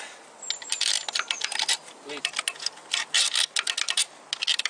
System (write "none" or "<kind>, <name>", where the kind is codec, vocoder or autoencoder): none